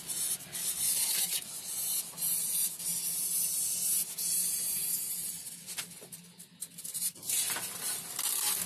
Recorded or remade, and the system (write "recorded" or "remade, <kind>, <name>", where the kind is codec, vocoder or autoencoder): recorded